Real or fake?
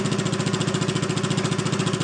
real